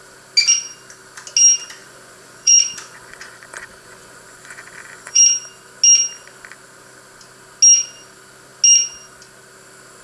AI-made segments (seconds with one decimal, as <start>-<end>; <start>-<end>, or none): 1.8-5.2